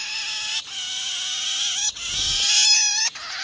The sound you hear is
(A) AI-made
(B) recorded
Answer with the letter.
B